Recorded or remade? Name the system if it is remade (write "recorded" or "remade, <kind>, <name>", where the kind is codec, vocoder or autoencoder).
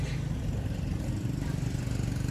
recorded